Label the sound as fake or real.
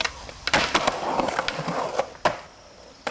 real